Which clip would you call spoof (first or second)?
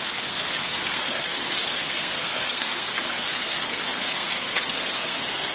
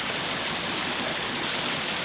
first